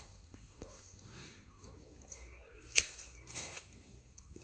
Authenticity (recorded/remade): remade